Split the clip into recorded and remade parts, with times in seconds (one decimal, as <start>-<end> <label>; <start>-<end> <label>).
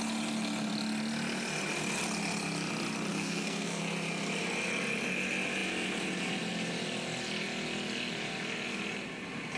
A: 0.0-3.1 recorded; 3.1-3.8 remade; 3.8-9.6 recorded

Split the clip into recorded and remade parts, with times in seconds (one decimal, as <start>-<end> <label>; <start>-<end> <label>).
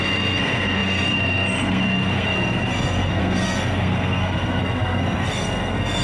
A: 0.0-6.0 remade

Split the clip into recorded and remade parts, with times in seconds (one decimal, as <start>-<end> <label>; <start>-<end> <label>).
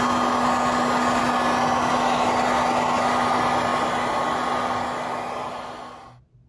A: 0.0-6.5 recorded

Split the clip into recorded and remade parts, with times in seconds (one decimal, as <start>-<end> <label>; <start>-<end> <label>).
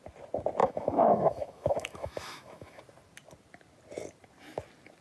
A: 0.0-0.6 recorded; 0.6-2.8 remade; 2.8-5.0 recorded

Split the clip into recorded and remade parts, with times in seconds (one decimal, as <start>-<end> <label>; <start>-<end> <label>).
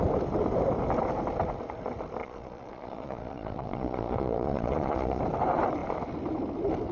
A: 0.0-2.2 recorded; 2.2-5.2 remade; 5.2-6.9 recorded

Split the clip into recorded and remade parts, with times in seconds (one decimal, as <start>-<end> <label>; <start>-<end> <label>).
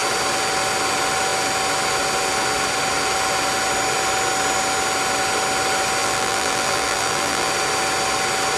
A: 0.0-6.0 recorded; 6.0-7.5 remade; 7.5-8.6 recorded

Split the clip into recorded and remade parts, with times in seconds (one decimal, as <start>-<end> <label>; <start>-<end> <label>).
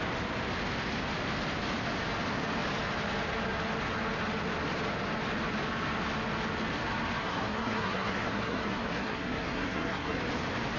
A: 0.0-7.2 recorded; 7.2-10.2 remade; 10.2-10.8 recorded